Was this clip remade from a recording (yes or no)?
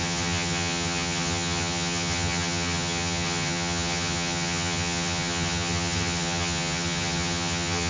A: yes